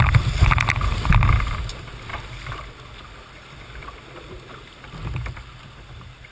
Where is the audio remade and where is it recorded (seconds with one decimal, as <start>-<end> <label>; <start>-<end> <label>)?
0.0-6.3 recorded